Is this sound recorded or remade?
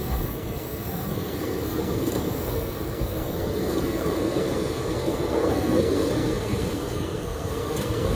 remade